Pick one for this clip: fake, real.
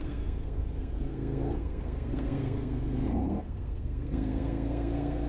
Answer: fake